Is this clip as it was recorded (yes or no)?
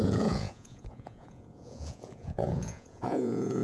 no